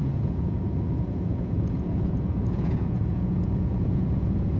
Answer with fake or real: fake